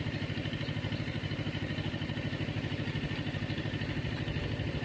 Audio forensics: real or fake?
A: real